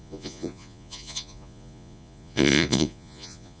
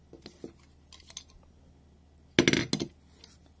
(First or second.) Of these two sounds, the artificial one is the first